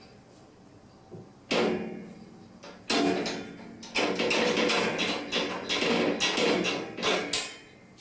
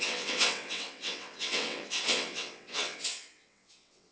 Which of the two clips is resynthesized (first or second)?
second